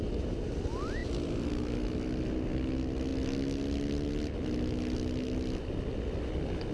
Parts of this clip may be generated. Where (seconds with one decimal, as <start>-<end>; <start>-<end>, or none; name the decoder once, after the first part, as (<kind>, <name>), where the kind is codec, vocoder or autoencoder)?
1.0-1.7 (vocoder, BigVGAN v2)